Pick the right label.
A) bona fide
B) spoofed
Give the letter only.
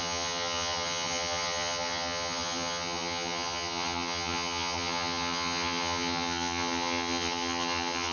B